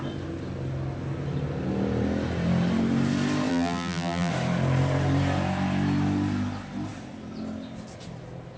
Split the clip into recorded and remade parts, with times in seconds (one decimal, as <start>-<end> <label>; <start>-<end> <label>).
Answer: 0.0-3.5 recorded; 3.5-4.3 remade; 4.3-8.6 recorded